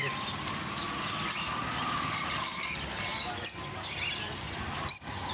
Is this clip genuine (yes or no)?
yes